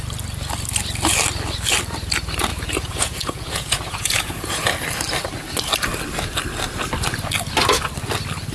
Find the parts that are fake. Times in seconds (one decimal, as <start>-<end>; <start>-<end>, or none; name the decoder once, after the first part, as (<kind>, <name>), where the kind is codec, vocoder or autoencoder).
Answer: 2.5-4.5 (vocoder, Vocos)